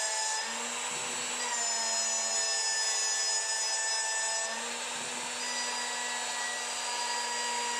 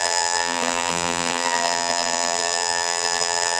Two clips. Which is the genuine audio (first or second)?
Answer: first